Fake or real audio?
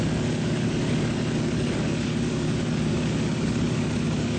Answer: fake